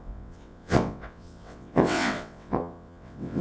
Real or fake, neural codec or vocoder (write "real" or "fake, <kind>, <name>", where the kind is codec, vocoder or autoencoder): fake, vocoder, WaveNeXt